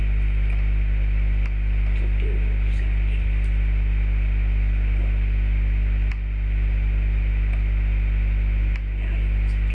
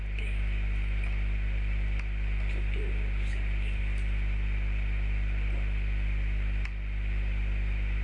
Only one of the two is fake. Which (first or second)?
second